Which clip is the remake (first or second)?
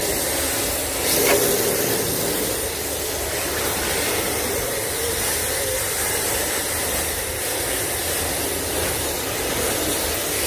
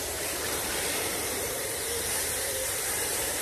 second